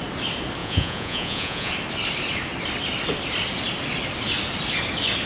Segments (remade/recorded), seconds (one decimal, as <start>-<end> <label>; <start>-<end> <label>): 0.0-0.6 recorded; 0.6-1.7 remade; 1.7-5.3 recorded